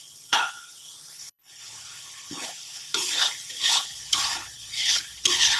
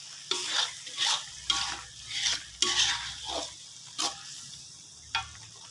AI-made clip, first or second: first